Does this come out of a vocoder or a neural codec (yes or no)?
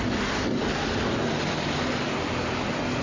no